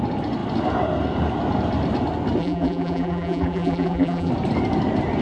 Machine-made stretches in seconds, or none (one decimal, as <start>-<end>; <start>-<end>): 2.4-4.3